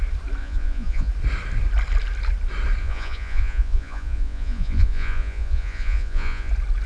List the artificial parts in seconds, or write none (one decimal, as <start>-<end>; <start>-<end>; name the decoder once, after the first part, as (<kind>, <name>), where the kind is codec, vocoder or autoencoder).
0.4-1.1 (vocoder, Vocos); 2.8-6.5